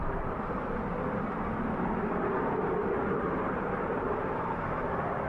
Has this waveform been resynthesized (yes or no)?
yes